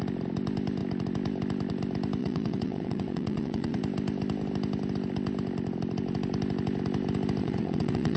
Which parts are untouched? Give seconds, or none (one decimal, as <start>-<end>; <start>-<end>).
0.0-2.2; 3.8-7.4